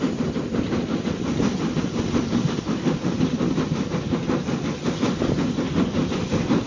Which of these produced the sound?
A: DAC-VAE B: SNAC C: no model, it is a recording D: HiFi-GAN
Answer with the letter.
C